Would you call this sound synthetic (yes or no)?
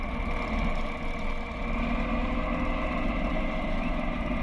no